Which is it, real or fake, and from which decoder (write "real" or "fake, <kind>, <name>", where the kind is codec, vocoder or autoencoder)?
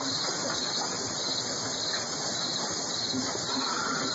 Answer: real